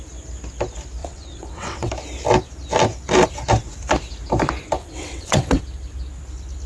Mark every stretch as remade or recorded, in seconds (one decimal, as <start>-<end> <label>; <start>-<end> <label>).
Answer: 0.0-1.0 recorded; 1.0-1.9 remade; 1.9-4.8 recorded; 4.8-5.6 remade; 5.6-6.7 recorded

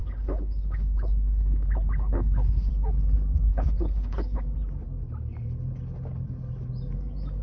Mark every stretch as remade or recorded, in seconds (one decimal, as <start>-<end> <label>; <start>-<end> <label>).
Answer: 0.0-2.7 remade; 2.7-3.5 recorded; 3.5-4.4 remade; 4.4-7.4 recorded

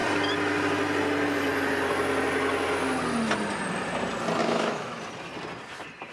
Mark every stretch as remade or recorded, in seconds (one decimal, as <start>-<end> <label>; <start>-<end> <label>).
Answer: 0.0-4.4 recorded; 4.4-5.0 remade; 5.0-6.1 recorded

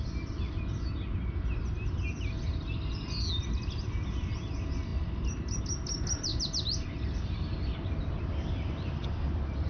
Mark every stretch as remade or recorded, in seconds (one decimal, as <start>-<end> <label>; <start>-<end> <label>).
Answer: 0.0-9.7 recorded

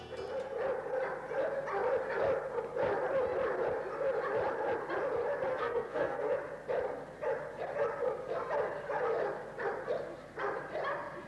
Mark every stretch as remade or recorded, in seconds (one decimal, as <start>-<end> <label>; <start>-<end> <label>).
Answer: 0.0-5.5 recorded; 5.5-6.3 remade; 6.3-11.3 recorded